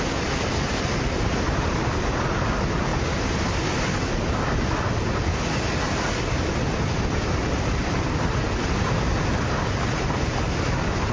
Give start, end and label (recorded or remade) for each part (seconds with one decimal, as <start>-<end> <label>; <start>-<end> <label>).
0.0-11.1 recorded